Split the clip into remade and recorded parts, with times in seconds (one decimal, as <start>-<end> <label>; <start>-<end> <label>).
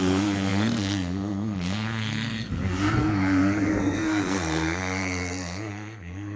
0.0-6.4 remade